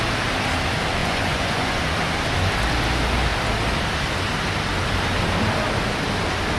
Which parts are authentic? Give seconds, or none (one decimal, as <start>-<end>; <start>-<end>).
0.0-1.0; 1.8-6.6